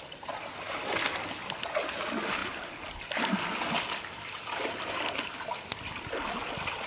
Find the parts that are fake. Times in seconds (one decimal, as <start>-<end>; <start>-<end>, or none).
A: none